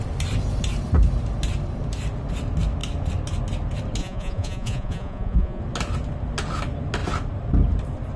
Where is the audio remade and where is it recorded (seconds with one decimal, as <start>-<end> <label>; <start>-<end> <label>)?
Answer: 0.0-4.0 recorded; 4.0-5.6 remade; 5.6-8.2 recorded